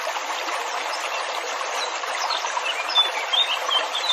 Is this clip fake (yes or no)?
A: no